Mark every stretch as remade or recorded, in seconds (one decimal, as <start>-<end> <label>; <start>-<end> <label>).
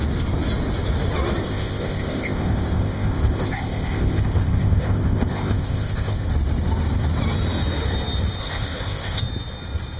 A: 0.0-1.4 recorded; 1.4-6.3 remade; 6.3-8.4 recorded; 8.4-9.2 remade; 9.2-10.0 recorded